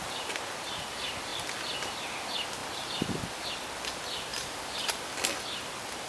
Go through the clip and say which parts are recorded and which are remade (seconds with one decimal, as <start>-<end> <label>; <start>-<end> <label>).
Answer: 0.0-1.3 recorded; 1.3-1.9 remade; 1.9-2.6 recorded; 2.6-3.5 remade; 3.5-4.3 recorded; 4.3-4.9 remade; 4.9-6.1 recorded